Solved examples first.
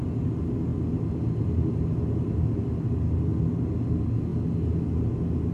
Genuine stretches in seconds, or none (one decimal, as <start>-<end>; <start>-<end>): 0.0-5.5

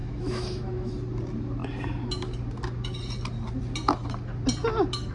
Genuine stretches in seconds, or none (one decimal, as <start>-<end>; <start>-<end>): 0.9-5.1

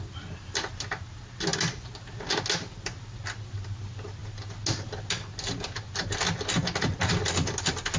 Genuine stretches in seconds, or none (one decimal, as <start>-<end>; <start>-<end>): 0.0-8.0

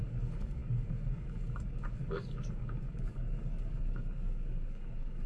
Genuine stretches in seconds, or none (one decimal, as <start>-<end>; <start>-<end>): none